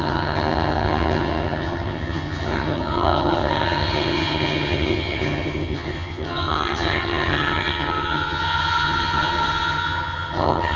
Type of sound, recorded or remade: remade